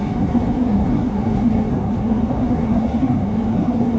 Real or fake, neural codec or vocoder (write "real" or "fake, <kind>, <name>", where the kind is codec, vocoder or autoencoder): fake, codec, SNAC